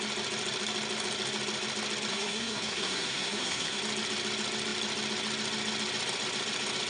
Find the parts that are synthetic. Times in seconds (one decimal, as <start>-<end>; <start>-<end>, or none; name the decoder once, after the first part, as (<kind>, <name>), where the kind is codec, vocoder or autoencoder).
2.1-3.8 (codec, SNAC)